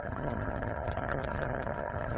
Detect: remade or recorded remade